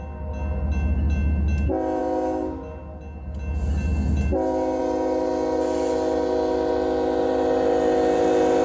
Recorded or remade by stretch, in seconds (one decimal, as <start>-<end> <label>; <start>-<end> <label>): 0.0-8.6 recorded